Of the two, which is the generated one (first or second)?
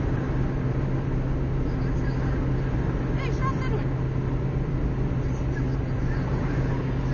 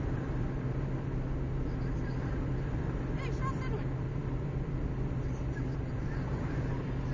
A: second